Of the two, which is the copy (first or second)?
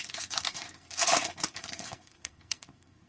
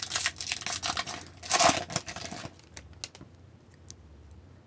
first